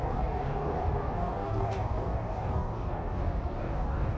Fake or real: fake